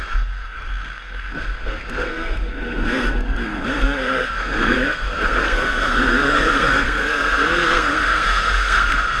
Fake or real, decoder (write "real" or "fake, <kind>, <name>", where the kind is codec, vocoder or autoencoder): fake, codec, SNAC